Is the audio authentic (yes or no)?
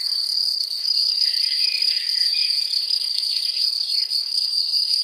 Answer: no